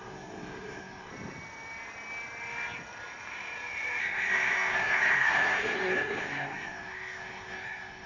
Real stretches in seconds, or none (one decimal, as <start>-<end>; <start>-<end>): 1.1-4.0